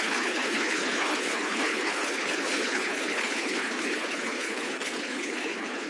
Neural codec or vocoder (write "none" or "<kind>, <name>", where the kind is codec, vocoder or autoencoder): codec, HILCodec